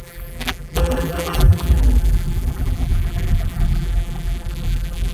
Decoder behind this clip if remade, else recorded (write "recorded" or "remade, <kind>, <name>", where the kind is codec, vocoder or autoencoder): remade, vocoder, BigVGAN v2